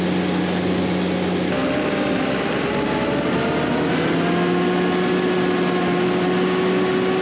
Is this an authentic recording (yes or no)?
yes